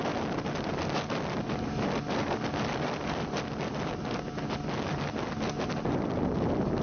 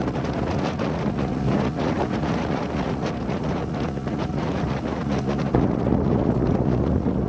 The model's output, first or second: second